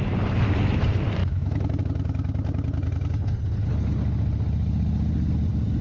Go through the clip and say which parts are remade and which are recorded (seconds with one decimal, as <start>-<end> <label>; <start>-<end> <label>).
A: 0.0-1.2 recorded; 1.2-1.8 remade; 1.8-5.8 recorded